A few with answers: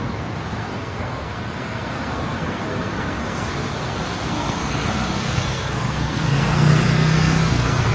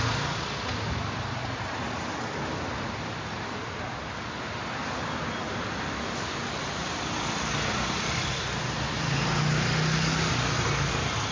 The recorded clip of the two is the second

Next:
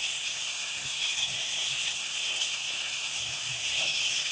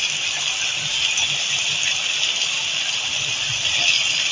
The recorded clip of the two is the second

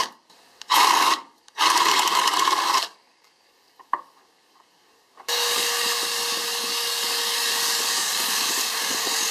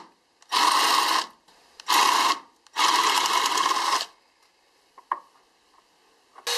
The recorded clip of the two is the second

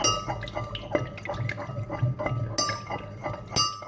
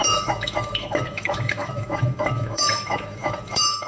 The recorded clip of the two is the first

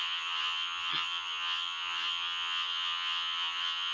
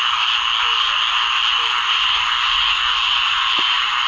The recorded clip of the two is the second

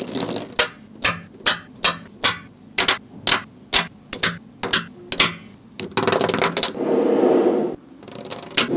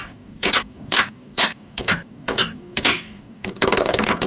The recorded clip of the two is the first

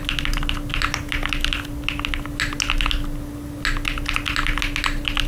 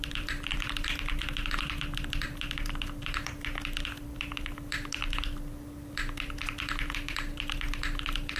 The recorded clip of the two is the first